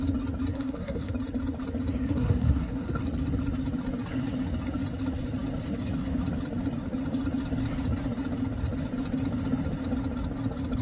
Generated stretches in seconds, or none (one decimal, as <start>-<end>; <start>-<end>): 0.5-1.1; 2.0-3.0